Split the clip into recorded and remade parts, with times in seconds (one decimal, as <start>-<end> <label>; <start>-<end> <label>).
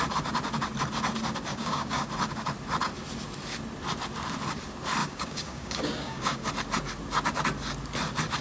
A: 0.0-1.5 recorded; 1.5-2.1 remade; 2.1-5.0 recorded; 5.0-6.5 remade; 6.5-8.4 recorded